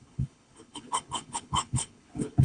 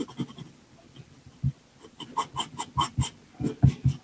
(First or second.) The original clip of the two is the second